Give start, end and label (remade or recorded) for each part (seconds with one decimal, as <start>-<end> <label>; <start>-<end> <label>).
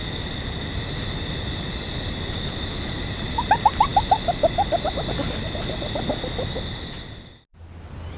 0.0-8.2 recorded